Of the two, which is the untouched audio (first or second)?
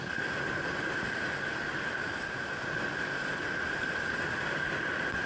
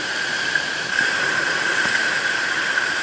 first